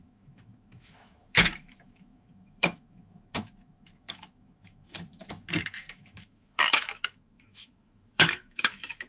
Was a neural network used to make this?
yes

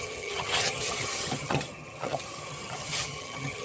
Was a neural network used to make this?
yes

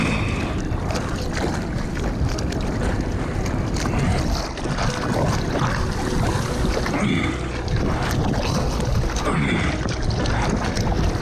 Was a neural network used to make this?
no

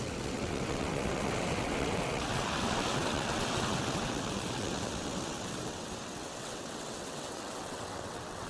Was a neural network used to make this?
yes